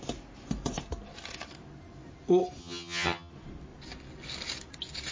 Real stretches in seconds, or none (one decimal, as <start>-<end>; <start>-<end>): 0.0-2.6; 3.3-5.1